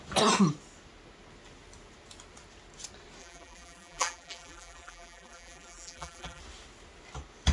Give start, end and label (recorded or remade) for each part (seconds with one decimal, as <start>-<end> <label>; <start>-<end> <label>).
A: 0.0-3.2 recorded; 3.2-6.4 remade; 6.4-7.5 recorded